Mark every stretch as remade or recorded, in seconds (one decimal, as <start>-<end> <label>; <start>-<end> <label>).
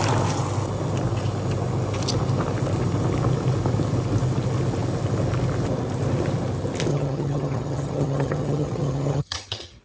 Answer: 0.0-6.9 recorded; 6.9-9.8 remade